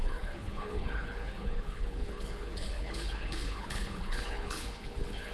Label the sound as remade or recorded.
remade